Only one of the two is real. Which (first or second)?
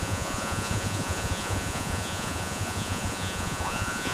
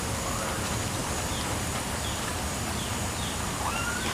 second